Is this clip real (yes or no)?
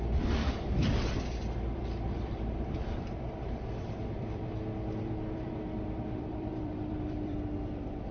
no